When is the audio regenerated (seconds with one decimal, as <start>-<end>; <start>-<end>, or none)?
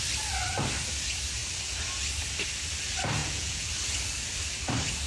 3.2-3.7